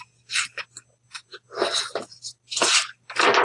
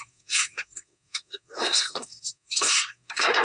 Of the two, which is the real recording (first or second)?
first